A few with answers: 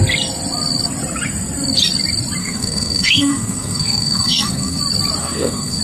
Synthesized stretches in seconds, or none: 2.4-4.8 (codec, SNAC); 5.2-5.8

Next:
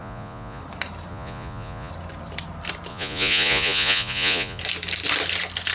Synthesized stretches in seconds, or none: 0.0-0.6 (vocoder, Vocos); 1.1-1.9; 2.9-4.6

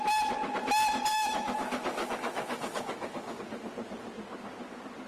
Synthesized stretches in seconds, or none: 1.1-3.4 (autoencoder, DAC-VAE)

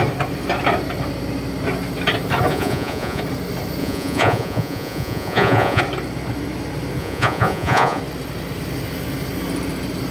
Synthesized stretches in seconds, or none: 2.5-3.2 (vocoder, Vocos); 3.8-5.8; 7.0-8.0

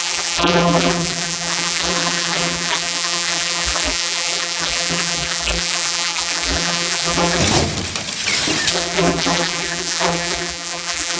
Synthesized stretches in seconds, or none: 0.0-7.4 (vocoder, BigVGAN v2); 8.7-11.2